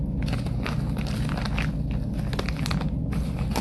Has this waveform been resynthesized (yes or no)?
no